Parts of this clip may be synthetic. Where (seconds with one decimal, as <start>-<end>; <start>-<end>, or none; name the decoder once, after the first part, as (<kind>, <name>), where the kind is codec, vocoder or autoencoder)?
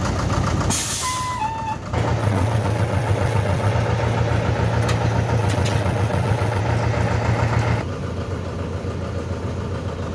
2.2-3.7 (vocoder, WaveNeXt); 5.4-6.6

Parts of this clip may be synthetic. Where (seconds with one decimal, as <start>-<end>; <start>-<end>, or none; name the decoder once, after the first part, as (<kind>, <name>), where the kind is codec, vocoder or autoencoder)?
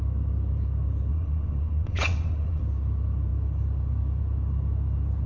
1.1-2.6 (vocoder, WaveNeXt)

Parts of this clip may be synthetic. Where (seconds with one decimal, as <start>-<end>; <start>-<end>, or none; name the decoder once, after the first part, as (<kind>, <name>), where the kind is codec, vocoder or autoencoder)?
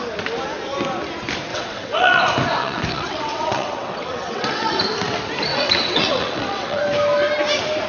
1.5-2.2 (vocoder, WaveNeXt); 2.6-4.8; 5.5-6.8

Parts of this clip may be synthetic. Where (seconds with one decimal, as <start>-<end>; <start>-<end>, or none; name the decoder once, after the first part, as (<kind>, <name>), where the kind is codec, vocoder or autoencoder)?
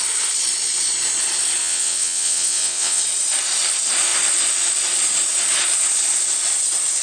1.6-3.0 (vocoder, WaveNeXt)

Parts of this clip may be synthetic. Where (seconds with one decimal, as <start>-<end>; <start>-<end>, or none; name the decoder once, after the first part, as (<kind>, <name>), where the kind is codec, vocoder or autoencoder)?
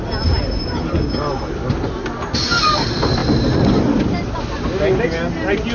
none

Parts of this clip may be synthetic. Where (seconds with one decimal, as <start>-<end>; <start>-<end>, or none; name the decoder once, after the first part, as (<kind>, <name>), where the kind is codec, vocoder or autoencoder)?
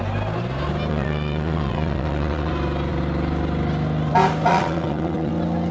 0.9-2.5 (vocoder, WaveNeXt); 4.5-5.3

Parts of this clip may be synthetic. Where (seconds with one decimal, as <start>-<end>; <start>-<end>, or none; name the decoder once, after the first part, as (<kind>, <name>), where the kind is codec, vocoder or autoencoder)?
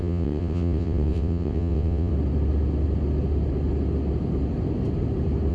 0.0-2.1 (vocoder, WaveNeXt)